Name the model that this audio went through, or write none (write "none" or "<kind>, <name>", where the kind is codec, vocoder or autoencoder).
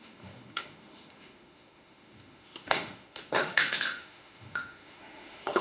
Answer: autoencoder, DAC-VAE